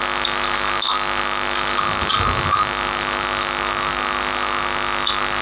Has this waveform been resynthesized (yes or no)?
no